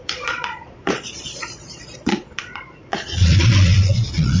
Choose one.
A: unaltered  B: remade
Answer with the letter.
B